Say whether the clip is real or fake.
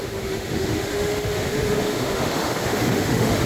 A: fake